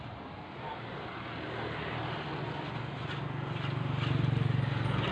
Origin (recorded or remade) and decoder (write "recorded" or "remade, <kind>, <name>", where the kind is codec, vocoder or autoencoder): recorded